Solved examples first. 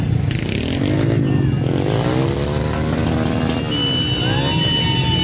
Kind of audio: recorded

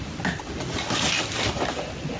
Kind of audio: recorded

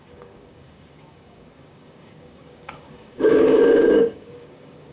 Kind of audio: remade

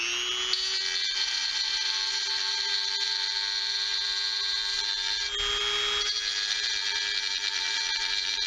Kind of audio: recorded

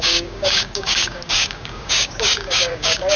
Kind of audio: remade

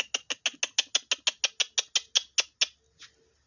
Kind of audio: recorded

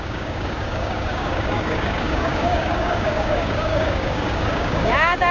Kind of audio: remade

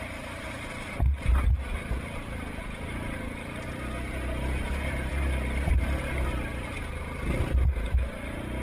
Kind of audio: recorded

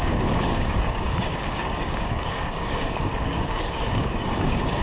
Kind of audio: remade